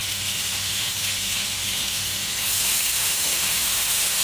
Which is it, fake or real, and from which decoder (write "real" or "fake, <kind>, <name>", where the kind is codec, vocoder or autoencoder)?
fake, autoencoder, DAC-VAE